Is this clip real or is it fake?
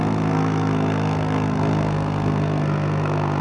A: fake